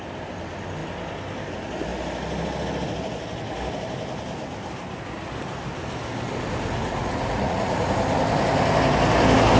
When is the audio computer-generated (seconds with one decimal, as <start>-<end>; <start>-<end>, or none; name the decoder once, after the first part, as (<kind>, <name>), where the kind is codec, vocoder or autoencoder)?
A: 7.0-7.9 (vocoder, Vocos)

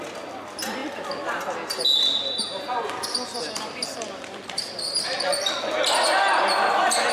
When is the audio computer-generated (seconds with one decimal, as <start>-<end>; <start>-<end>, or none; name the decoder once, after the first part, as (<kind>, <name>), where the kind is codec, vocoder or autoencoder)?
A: 3.8-5.5 (vocoder, BigVGAN v2)

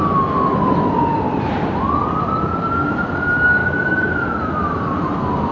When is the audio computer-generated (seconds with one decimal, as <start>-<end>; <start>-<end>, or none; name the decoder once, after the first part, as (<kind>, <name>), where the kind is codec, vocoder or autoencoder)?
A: 3.6-4.6 (autoencoder, DAC-VAE)

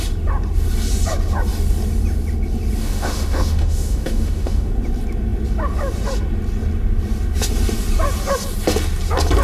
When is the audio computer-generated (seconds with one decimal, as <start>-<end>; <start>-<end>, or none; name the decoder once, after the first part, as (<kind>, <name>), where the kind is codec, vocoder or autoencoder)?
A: 2.8-4.7 (autoencoder, DAC-VAE)